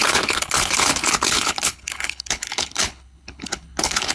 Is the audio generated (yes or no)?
yes